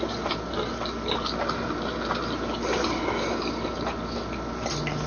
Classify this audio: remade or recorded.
recorded